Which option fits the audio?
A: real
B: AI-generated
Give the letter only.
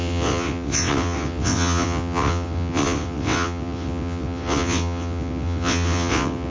B